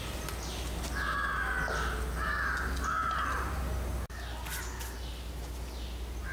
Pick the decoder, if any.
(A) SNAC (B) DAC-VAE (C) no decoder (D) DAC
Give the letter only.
C